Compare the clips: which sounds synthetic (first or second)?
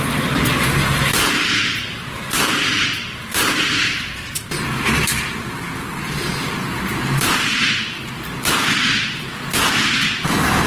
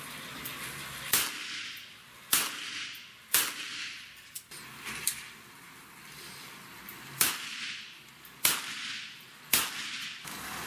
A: first